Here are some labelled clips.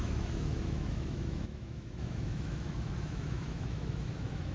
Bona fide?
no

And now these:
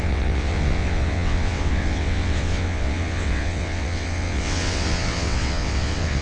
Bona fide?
no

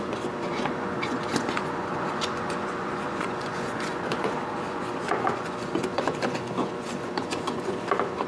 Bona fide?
no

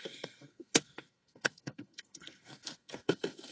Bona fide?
no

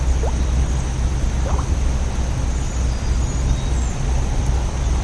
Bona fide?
yes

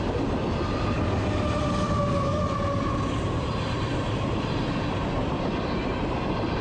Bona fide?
no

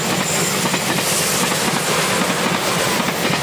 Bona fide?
yes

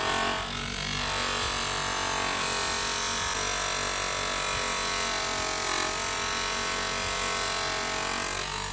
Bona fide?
yes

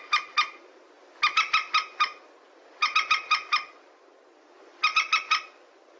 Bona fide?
yes